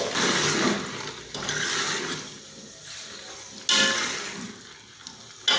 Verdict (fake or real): real